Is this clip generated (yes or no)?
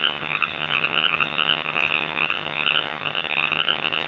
yes